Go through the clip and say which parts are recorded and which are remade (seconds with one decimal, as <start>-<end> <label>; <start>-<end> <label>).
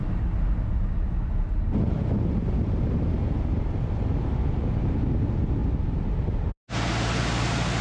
0.0-7.8 recorded